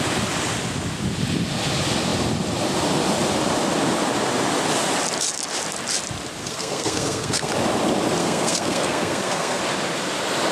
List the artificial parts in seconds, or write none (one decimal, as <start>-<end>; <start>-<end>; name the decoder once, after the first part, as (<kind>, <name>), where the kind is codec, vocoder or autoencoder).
6.4-7.5 (codec, SNAC); 8.2-9.6